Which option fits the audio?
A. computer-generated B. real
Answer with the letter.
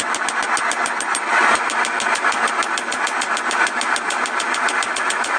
B